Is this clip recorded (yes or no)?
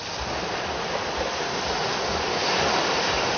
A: yes